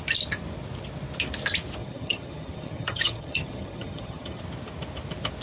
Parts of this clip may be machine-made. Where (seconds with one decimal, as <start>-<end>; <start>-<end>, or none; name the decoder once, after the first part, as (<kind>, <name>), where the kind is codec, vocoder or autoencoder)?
1.8-4.4 (vocoder, HiFi-GAN)